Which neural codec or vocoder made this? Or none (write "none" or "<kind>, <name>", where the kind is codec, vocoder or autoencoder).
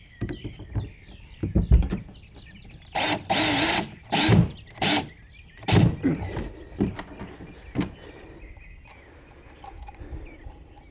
none